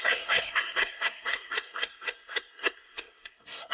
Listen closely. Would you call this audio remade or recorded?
remade